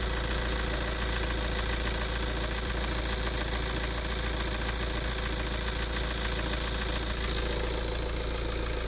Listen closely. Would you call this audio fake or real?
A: real